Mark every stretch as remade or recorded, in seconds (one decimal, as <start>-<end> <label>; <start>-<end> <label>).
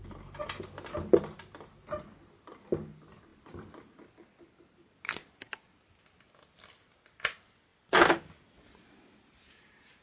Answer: 0.0-10.0 recorded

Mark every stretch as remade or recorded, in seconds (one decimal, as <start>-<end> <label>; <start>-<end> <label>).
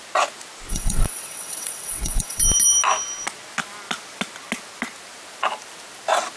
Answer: 0.0-0.7 recorded; 0.7-2.4 remade; 2.4-6.4 recorded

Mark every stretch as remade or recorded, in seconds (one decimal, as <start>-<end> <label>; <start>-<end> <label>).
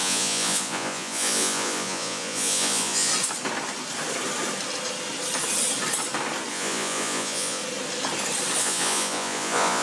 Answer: 0.0-3.1 remade; 3.1-6.5 recorded; 6.5-7.6 remade; 7.6-8.6 recorded; 8.6-9.8 remade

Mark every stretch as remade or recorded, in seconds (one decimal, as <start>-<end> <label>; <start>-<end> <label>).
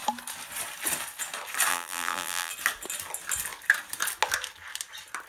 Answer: 0.0-1.7 recorded; 1.7-2.5 remade; 2.5-5.3 recorded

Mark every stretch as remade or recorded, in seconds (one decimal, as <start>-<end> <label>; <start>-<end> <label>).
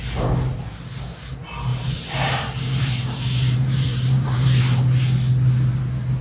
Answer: 0.0-1.7 recorded; 1.7-4.6 remade; 4.6-6.2 recorded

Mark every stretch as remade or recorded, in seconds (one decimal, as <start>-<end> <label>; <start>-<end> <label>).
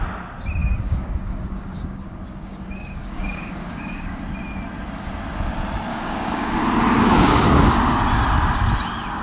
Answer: 0.0-0.6 recorded; 0.6-4.2 remade; 4.2-5.9 recorded; 5.9-6.6 remade; 6.6-7.0 recorded; 7.0-7.9 remade; 7.9-9.2 recorded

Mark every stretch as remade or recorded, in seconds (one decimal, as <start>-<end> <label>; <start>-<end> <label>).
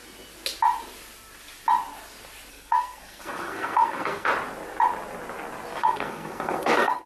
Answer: 0.0-2.5 recorded; 2.5-4.3 remade; 4.3-5.8 recorded; 5.8-7.1 remade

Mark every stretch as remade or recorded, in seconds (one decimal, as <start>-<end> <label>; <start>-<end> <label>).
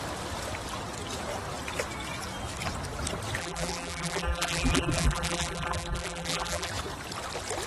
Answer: 0.0-3.4 recorded; 3.4-6.7 remade; 6.7-7.7 recorded